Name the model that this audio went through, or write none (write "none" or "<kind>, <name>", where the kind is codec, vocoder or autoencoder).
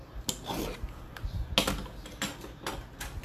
none